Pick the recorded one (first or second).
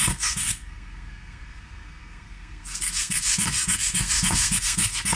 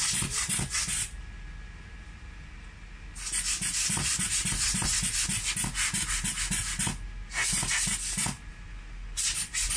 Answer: second